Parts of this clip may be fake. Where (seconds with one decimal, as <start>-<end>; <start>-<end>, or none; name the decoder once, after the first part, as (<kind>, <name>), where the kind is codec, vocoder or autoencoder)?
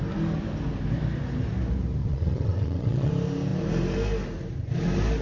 2.0-3.1 (vocoder, WaveNeXt)